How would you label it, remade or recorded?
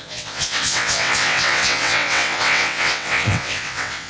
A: remade